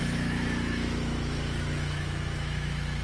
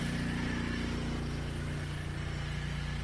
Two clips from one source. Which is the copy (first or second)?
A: first